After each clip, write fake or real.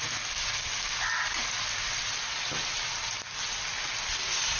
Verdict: real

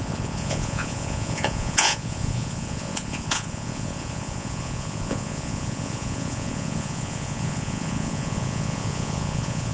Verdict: fake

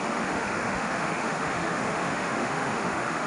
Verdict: fake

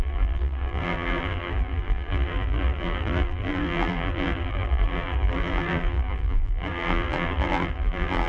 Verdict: fake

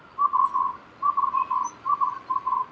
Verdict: real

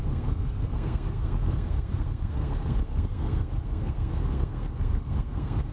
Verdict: fake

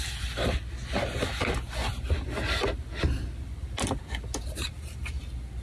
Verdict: real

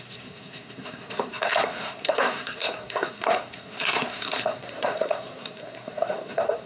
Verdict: fake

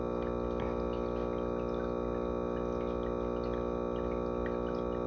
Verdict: real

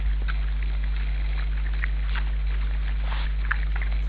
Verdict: real